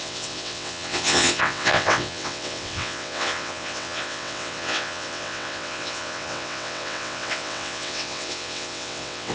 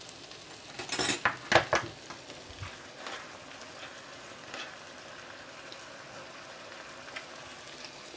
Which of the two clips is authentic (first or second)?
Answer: second